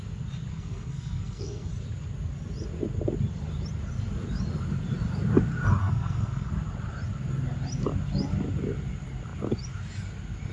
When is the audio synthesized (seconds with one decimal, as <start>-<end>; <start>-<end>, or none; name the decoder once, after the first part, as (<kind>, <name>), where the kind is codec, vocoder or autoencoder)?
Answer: 0.5-1.7 (codec, SNAC); 5.8-6.5